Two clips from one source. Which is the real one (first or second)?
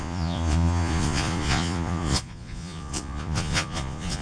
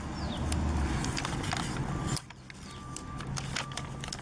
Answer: second